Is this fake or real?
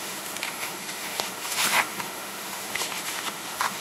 fake